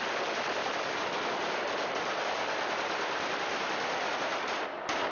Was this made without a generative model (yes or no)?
no